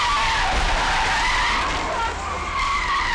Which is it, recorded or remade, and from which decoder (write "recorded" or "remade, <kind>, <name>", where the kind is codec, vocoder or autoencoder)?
remade, vocoder, BigVGAN v2